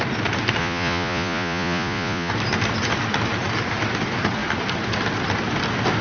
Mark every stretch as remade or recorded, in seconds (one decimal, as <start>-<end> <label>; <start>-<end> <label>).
0.0-0.6 recorded; 0.6-2.3 remade; 2.3-6.0 recorded